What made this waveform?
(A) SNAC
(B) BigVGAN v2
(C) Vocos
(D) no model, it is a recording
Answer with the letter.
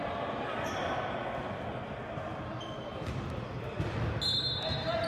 D